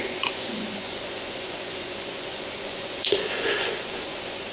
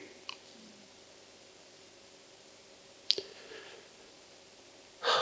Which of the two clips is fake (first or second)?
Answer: first